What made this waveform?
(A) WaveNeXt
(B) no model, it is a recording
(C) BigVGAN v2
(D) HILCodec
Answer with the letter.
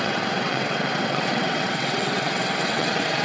A